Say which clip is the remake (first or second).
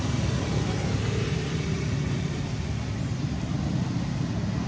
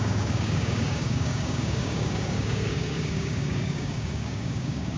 second